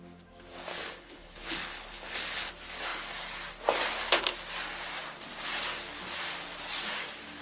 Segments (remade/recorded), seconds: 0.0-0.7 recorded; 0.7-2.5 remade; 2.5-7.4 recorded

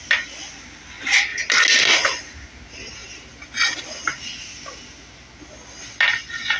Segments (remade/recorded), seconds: 0.0-6.6 recorded

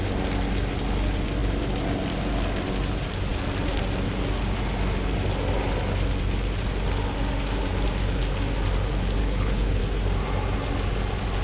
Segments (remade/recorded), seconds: 0.0-9.2 recorded; 9.2-9.8 remade; 9.8-11.4 recorded

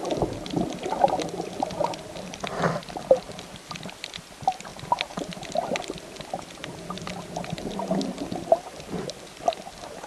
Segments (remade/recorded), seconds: 0.0-10.1 recorded

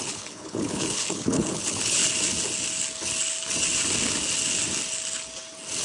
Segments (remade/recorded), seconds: 0.0-2.0 remade; 2.0-5.8 recorded